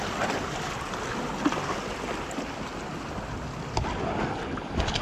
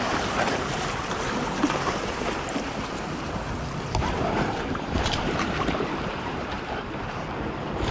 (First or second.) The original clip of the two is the first